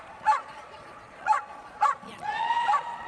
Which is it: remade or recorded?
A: remade